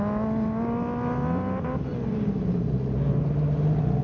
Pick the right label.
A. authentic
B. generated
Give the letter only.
A